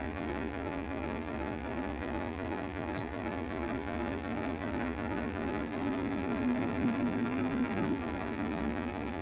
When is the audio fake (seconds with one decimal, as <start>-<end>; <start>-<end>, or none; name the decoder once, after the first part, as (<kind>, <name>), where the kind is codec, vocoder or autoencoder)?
0.0-9.2 (vocoder, BigVGAN v2)